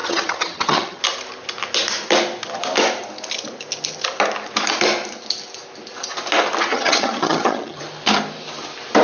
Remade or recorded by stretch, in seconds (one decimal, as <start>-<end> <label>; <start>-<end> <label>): 0.0-1.0 remade; 1.0-6.7 recorded; 6.7-7.8 remade; 7.8-9.0 recorded